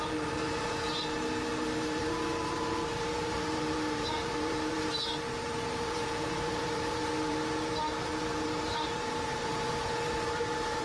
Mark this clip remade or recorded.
remade